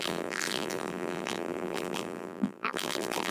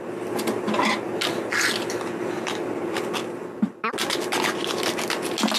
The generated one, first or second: first